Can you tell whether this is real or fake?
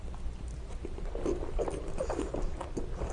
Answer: real